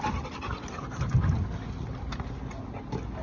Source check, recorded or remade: recorded